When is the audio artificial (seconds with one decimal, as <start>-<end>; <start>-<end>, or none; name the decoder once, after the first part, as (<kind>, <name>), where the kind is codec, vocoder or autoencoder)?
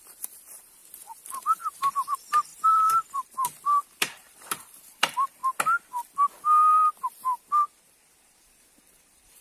0.0-0.8 (vocoder, BigVGAN v2); 1.8-5.4; 8.8-9.4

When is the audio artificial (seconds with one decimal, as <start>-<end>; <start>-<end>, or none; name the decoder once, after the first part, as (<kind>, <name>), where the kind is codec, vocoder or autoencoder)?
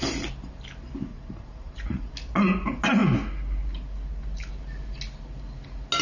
1.1-2.1 (vocoder, Vocos)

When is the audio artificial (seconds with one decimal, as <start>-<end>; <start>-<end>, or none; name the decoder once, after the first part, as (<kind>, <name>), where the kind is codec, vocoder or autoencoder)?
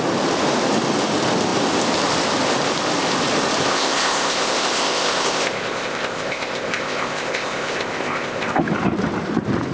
3.7-8.6 (codec, ZipCodec)